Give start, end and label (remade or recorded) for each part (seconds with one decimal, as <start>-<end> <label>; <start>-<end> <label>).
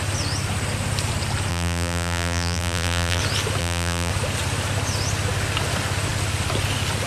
0.0-1.5 recorded; 1.5-3.2 remade; 3.2-3.6 recorded; 3.6-4.1 remade; 4.1-7.1 recorded